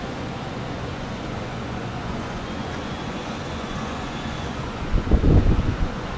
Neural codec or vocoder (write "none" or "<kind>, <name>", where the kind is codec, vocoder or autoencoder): vocoder, Vocos